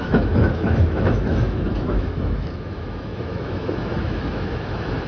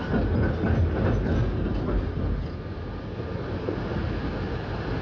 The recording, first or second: second